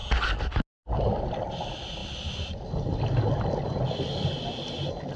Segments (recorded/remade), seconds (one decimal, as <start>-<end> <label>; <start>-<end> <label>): 0.0-5.2 recorded